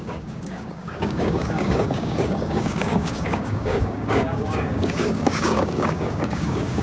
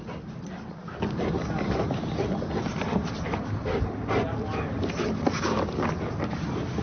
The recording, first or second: second